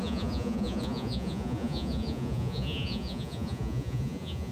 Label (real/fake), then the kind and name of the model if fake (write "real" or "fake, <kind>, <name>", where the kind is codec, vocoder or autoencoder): fake, vocoder, Vocos